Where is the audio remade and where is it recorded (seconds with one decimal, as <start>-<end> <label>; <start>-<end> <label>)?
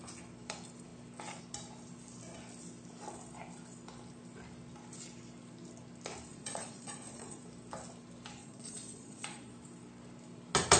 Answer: 0.0-6.3 recorded; 6.3-7.4 remade; 7.4-8.4 recorded; 8.4-9.5 remade; 9.5-10.8 recorded